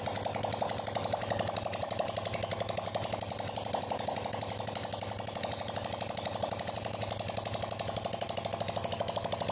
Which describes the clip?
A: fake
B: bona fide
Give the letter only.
B